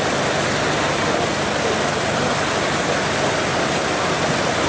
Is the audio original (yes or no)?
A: yes